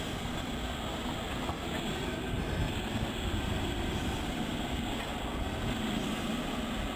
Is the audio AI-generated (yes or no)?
yes